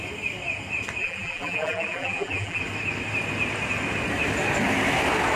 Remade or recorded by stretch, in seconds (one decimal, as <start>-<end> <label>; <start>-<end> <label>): 0.0-1.0 recorded; 1.0-2.6 remade; 2.6-5.4 recorded